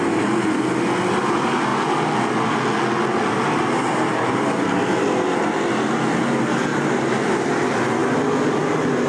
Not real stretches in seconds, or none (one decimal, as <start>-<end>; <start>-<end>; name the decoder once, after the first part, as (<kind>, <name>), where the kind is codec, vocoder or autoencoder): 6.7-7.4 (vocoder, BigVGAN v2)